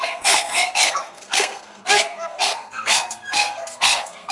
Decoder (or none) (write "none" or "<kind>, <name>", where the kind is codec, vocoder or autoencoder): codec, SNAC